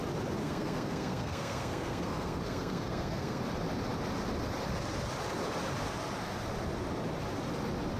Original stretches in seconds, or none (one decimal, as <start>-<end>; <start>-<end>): 0.0-0.4; 3.4-8.0